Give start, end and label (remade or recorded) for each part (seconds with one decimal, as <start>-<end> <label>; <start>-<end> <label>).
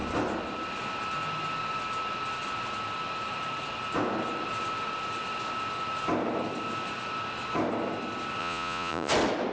0.0-8.4 recorded; 8.4-9.1 remade; 9.1-9.5 recorded